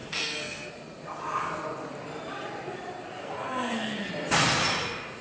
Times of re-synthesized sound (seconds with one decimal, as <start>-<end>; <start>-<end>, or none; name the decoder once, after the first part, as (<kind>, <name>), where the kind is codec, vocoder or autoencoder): 0.0-0.7 (codec, SNAC); 3.2-4.1